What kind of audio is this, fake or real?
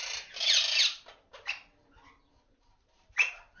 real